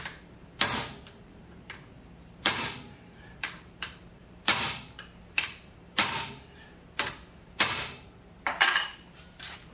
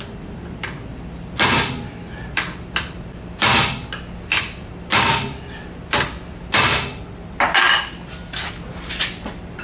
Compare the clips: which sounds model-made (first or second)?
first